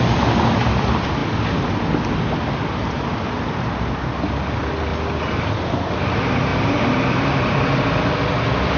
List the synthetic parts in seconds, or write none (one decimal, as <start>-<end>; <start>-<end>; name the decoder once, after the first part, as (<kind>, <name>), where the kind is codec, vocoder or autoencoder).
6.5-8.1 (vocoder, BigVGAN v2)